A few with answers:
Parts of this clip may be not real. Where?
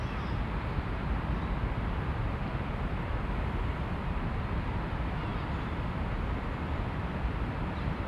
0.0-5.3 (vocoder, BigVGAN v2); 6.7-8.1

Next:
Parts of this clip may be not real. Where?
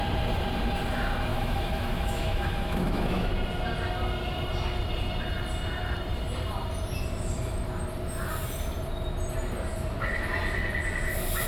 1.3-3.3 (autoencoder, DAC-VAE)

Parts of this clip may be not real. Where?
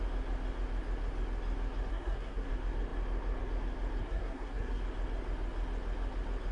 1.9-2.5 (codec, SNAC); 4.0-4.8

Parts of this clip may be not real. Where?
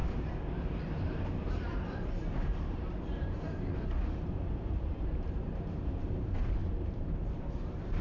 0.0-8.0 (vocoder, BigVGAN v2)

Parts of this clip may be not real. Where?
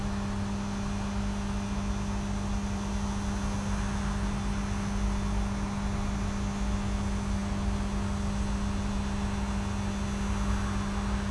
none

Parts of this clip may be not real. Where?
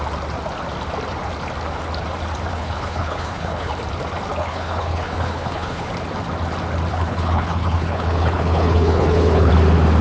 2.5-3.7 (codec, HILCodec); 4.4-5.9; 6.9-9.5